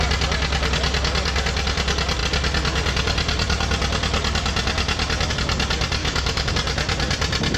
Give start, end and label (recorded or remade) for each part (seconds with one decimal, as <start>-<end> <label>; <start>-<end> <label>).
0.0-6.0 recorded; 6.0-6.5 remade; 6.5-7.6 recorded